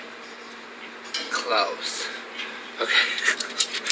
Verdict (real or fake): fake